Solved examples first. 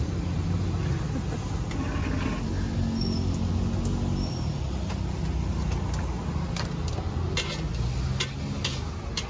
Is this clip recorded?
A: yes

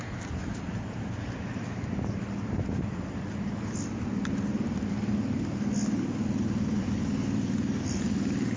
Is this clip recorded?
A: yes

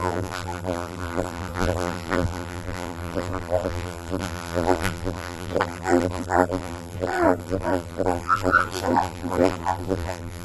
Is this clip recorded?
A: no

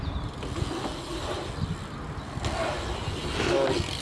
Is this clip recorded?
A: yes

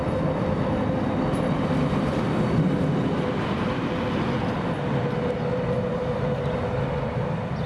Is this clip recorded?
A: yes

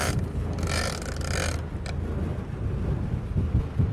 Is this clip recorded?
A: yes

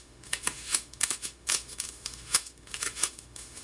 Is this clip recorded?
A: no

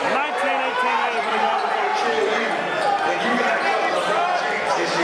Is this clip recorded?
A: yes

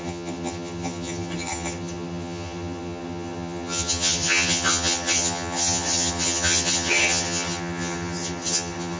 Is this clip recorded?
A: no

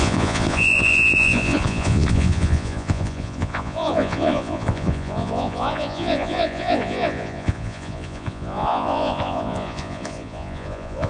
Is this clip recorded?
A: no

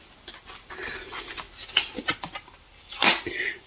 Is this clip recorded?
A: yes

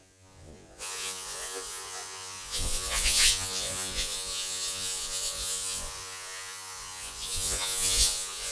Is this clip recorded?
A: no